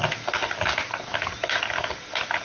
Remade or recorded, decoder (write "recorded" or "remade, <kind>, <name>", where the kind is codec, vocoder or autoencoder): recorded